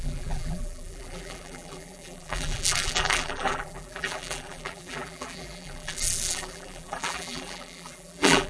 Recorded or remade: remade